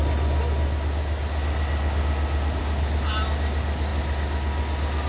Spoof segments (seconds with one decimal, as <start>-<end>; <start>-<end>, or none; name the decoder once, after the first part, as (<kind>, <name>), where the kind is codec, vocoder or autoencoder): none